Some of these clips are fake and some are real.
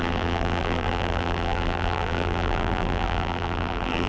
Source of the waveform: fake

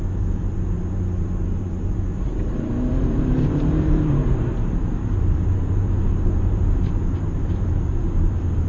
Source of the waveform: fake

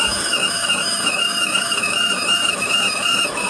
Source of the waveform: fake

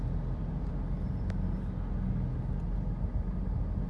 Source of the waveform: real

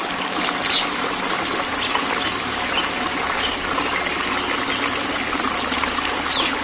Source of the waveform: real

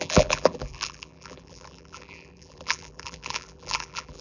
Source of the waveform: fake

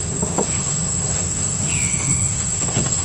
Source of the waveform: fake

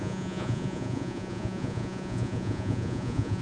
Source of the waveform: fake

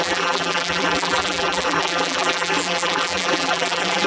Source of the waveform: fake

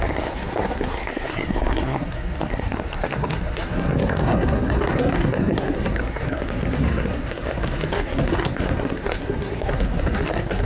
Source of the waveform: fake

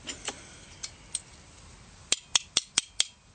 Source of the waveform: real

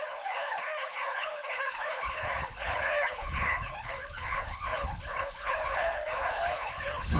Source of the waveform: fake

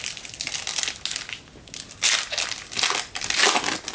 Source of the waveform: real